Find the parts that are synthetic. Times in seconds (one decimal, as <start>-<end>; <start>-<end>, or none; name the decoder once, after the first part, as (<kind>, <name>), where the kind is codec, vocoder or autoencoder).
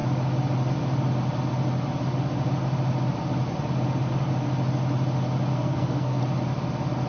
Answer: 5.5-6.2 (codec, SNAC)